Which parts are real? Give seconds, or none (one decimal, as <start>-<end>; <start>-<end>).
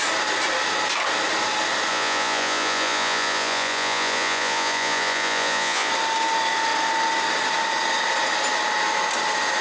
0.0-1.9; 5.9-9.6